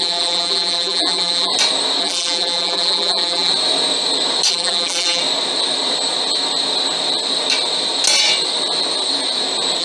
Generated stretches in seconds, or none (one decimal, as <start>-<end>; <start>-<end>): 0.0-1.5; 2.0-3.5; 4.5-5.2